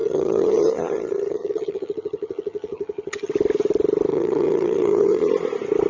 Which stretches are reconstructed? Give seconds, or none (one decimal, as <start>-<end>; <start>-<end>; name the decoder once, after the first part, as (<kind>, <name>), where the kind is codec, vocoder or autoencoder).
0.0-3.3 (vocoder, HiFi-GAN); 4.1-5.3